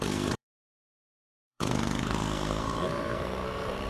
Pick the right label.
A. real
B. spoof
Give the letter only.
B